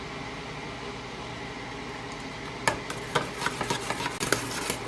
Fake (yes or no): no